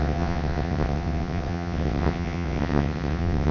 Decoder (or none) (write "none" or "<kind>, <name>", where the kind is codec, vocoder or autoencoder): vocoder, WaveNeXt